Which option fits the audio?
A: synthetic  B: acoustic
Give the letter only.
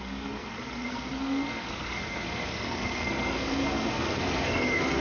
A